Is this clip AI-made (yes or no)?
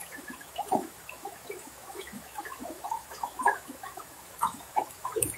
yes